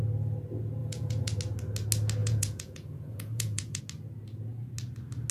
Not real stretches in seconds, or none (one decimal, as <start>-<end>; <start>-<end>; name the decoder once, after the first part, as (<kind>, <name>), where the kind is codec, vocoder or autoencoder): 0.8-1.4 (vocoder, Vocos); 2.2-3.8